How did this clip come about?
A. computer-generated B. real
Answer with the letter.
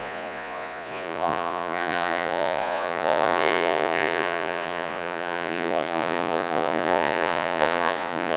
A